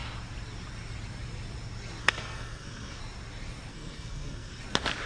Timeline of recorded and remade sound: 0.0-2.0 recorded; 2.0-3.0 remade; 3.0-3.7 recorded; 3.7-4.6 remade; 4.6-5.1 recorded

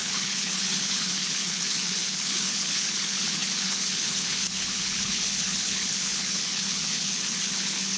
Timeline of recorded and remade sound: 0.0-8.0 remade

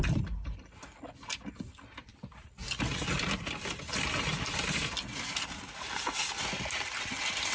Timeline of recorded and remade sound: 0.0-7.5 recorded

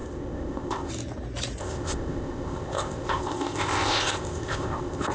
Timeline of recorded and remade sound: 0.0-0.9 remade; 0.9-1.6 recorded; 1.6-5.1 remade